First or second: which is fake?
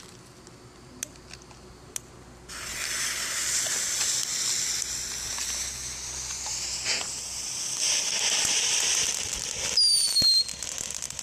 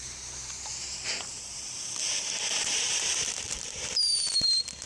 second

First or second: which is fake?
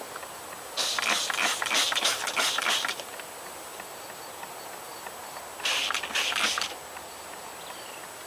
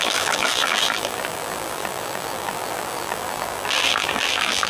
second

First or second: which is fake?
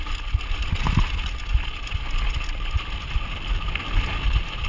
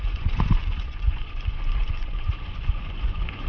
second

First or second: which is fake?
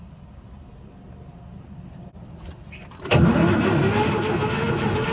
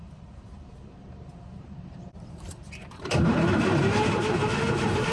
second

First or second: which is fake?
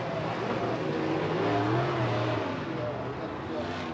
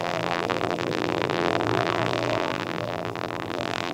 second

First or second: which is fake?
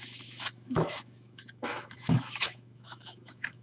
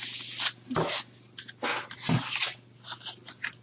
first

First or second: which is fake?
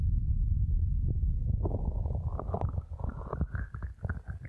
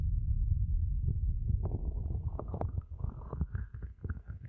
second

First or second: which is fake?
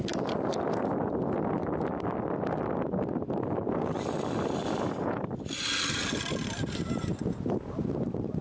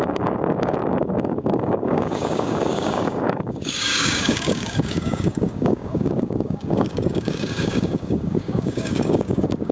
second